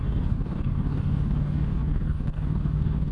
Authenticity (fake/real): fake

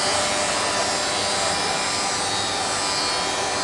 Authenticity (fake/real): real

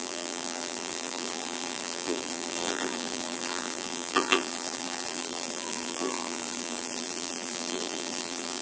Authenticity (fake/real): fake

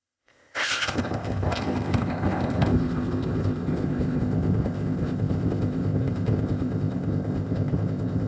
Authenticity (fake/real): fake